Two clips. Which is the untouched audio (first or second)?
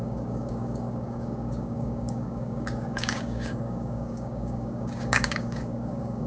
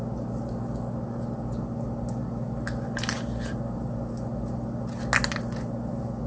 second